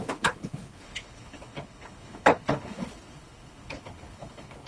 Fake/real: fake